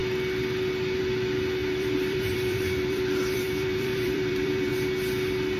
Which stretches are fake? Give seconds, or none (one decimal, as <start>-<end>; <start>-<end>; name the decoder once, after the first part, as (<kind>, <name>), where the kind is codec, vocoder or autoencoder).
1.6-4.7 (vocoder, BigVGAN v2)